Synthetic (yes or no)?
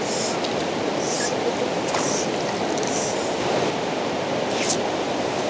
no